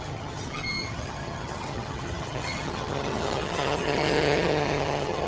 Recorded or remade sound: remade